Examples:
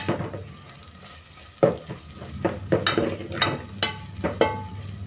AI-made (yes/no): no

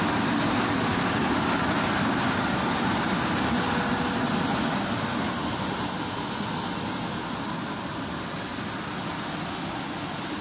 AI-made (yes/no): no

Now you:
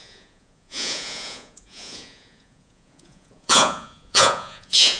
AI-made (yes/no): yes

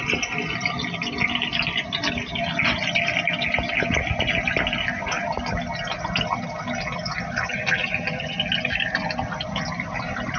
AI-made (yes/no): no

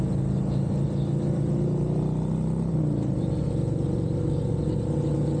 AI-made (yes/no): no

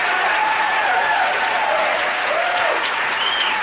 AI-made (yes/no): yes